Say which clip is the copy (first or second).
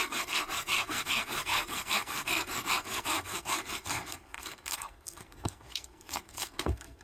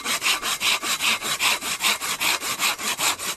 first